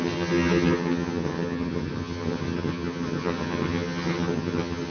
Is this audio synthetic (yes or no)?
yes